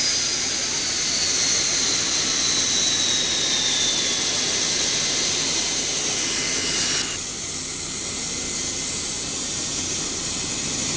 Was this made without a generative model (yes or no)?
yes